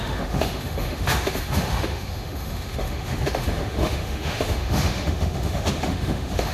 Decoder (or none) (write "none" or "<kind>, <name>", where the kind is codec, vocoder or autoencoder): autoencoder, DAC-VAE